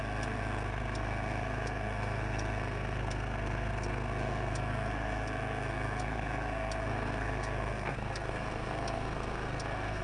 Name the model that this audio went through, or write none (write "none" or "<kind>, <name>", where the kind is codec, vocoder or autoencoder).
codec, SNAC